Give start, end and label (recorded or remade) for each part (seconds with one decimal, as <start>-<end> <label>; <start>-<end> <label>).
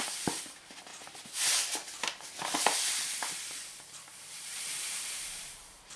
0.0-0.9 remade; 0.9-4.5 recorded; 4.5-6.0 remade